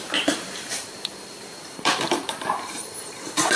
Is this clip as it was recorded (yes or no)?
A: no